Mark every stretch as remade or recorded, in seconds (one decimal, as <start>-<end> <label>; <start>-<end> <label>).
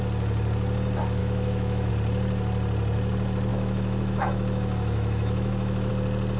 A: 0.0-1.2 recorded; 1.2-1.9 remade; 1.9-3.5 recorded; 3.5-5.9 remade; 5.9-6.4 recorded